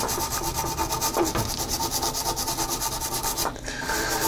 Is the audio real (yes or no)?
yes